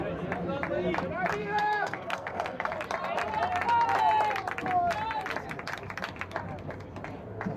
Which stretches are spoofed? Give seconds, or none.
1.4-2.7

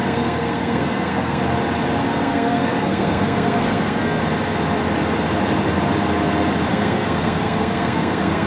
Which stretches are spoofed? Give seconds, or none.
0.0-1.4; 2.0-4.2; 6.7-8.5

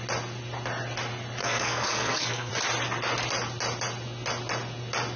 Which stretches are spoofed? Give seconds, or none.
1.4-2.5